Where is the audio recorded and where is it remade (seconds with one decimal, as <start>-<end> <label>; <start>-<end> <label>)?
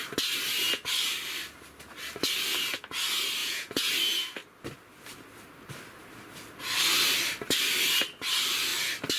0.0-3.4 recorded; 3.4-3.9 remade; 3.9-9.2 recorded